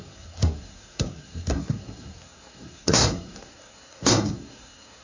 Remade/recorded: remade